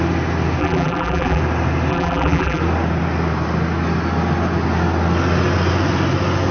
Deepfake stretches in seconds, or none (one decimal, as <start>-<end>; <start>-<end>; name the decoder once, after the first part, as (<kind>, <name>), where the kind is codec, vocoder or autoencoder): 0.6-1.4 (vocoder, BigVGAN v2); 1.9-2.6

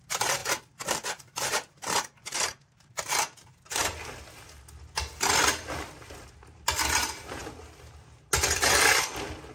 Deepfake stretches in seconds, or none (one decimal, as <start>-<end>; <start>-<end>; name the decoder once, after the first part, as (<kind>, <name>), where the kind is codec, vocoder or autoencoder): 0.0-3.8 (vocoder, BigVGAN v2); 6.9-7.4